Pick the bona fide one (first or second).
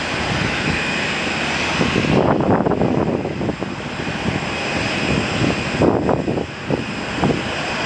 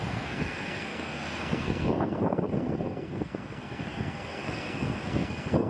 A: first